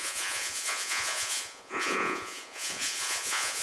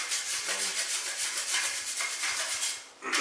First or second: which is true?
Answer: second